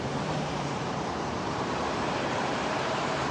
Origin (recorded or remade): remade